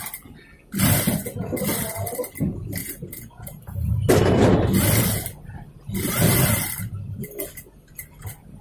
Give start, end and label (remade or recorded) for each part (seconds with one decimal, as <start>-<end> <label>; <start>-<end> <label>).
0.0-2.8 recorded; 2.8-3.6 remade; 3.6-8.6 recorded